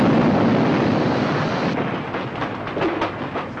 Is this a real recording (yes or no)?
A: yes